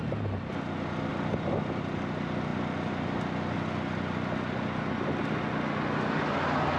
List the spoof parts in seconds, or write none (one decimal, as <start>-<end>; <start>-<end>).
1.1-1.8